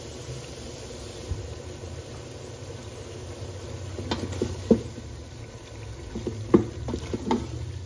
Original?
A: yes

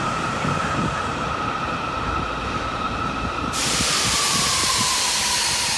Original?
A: no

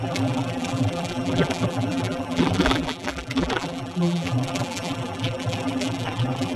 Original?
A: no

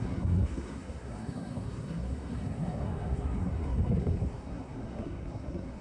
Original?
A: no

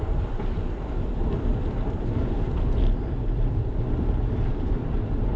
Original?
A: no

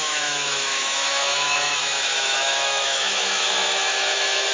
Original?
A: no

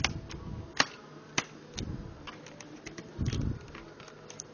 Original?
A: yes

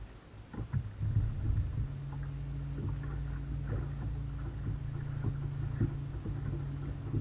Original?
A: yes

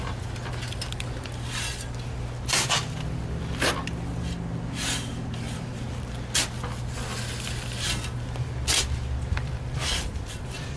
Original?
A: yes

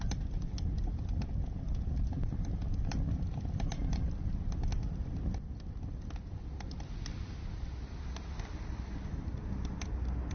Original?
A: yes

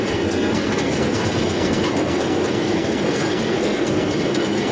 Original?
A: no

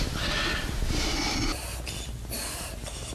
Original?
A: yes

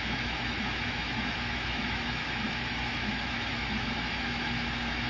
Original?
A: no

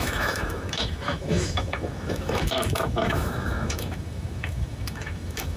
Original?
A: no